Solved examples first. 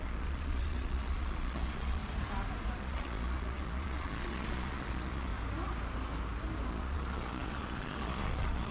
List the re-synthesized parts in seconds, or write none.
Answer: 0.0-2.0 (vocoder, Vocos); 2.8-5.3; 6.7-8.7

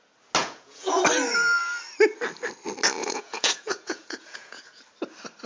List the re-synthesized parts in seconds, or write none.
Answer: 0.4-1.0 (vocoder, Vocos); 3.0-4.8

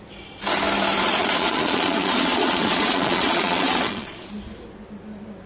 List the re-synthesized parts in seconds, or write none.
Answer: 1.0-4.3 (vocoder, Vocos)

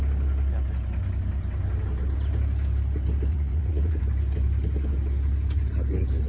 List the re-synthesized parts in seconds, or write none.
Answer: 3.3-4.0 (vocoder, Vocos)

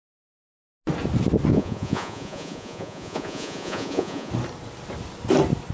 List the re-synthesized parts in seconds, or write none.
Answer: 1.5-4.3 (vocoder, Vocos)

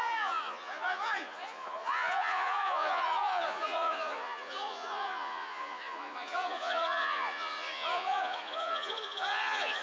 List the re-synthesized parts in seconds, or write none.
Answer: 0.0-9.8 (vocoder, Vocos)

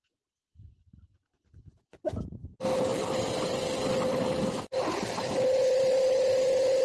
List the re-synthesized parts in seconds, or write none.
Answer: none

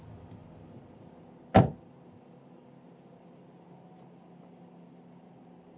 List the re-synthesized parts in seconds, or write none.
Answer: none